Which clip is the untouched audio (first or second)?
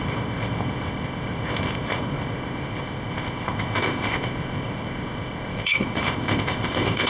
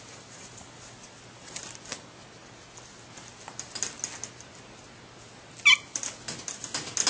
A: second